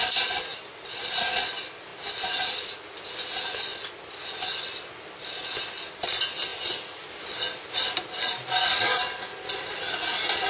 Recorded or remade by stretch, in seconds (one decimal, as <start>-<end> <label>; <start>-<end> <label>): 0.0-0.5 recorded; 0.5-1.3 remade; 1.3-1.9 recorded; 1.9-2.7 remade; 2.7-10.5 recorded

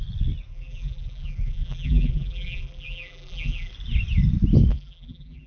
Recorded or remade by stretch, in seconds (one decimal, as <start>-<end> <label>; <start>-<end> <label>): 0.0-0.5 recorded; 0.5-3.7 remade; 3.7-4.7 recorded; 4.7-5.5 remade

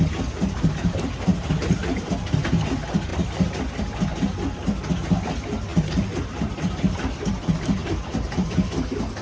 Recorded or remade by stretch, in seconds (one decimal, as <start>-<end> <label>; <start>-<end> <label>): 0.0-1.3 recorded; 1.3-2.1 remade; 2.1-3.1 recorded; 3.1-3.7 remade; 3.7-7.8 recorded; 7.8-8.5 remade; 8.5-9.2 recorded